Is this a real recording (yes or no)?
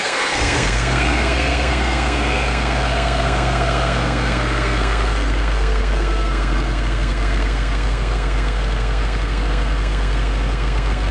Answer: no